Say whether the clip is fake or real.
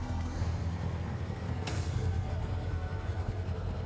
fake